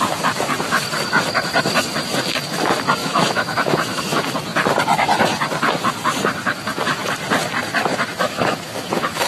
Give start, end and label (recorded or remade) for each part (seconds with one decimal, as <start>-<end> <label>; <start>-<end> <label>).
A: 0.0-3.0 recorded; 3.0-4.0 remade; 4.0-7.9 recorded; 7.9-9.3 remade